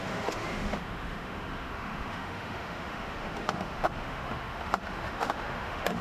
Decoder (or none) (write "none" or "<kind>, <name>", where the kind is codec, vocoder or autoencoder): autoencoder, DAC-VAE